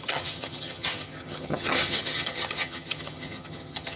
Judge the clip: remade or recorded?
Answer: remade